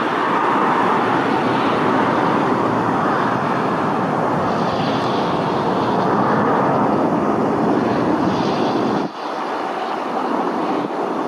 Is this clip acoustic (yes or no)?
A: yes